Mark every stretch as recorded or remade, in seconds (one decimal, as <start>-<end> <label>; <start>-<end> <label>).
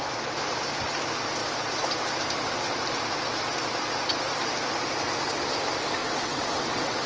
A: 0.0-6.0 recorded; 6.0-7.1 remade